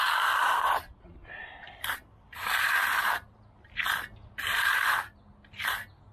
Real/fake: real